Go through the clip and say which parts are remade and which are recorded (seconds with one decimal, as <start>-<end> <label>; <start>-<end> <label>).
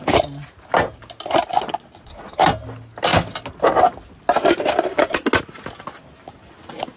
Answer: 0.0-1.5 recorded; 1.5-2.1 remade; 2.1-7.0 recorded